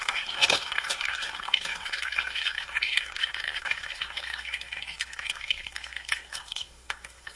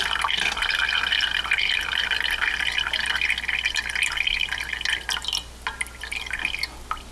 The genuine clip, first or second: second